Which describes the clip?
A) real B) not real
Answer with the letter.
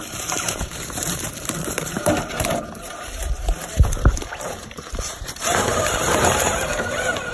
B